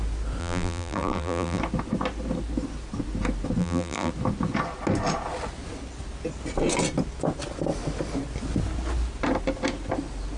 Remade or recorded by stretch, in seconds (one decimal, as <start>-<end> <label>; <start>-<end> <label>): 0.0-0.4 recorded; 0.4-1.6 remade; 1.6-3.6 recorded; 3.6-4.1 remade; 4.1-10.4 recorded